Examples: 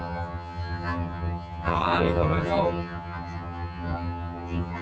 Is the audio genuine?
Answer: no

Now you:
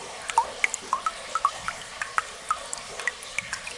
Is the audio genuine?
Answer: yes